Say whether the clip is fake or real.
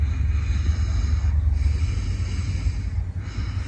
real